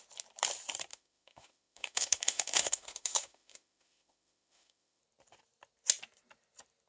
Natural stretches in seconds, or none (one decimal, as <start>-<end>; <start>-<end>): 0.0-0.9; 5.0-6.9